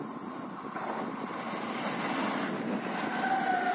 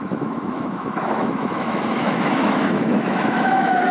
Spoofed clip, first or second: second